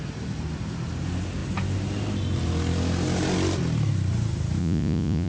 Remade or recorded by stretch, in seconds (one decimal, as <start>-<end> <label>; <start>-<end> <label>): 0.0-4.6 recorded; 4.6-5.3 remade